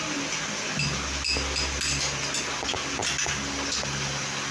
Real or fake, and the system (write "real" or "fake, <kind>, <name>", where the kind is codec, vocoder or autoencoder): real